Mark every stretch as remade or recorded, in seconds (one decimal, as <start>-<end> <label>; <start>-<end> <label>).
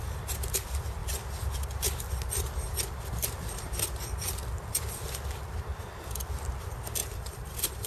0.0-7.0 recorded; 7.0-7.9 remade